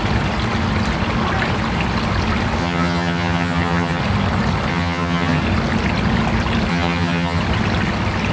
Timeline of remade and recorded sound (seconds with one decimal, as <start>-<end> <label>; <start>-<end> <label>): 0.0-2.6 recorded; 2.6-4.0 remade; 4.0-4.7 recorded; 4.7-5.4 remade; 5.4-6.7 recorded; 6.7-7.4 remade; 7.4-8.3 recorded